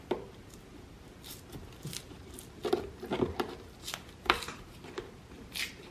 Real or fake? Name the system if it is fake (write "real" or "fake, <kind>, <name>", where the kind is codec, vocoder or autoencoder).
real